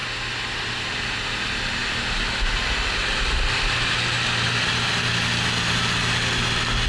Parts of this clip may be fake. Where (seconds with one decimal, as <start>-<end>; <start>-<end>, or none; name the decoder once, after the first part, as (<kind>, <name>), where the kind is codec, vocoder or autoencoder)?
none